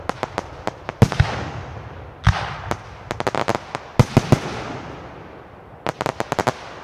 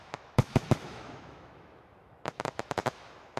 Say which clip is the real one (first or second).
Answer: first